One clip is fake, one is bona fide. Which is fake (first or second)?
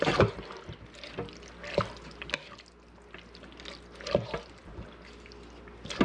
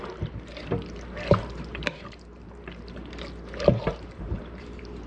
second